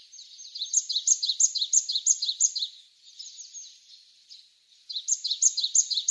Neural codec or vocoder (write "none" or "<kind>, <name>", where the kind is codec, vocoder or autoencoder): none